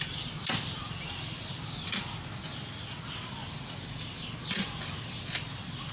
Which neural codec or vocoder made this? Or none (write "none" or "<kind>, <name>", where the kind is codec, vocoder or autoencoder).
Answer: none